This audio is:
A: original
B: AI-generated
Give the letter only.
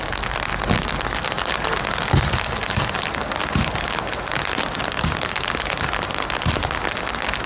A